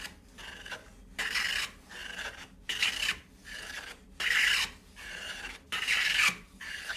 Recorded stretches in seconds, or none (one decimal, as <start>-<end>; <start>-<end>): 0.0-2.0; 6.2-7.0